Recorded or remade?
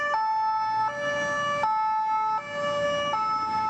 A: recorded